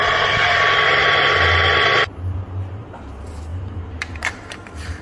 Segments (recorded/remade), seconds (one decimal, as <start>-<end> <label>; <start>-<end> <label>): 0.0-3.0 remade; 3.0-3.5 recorded; 3.5-5.0 remade